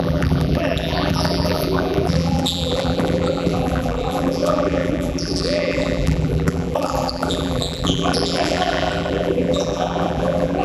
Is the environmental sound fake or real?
fake